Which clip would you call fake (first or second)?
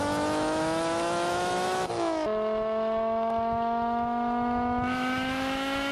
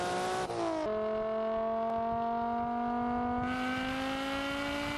first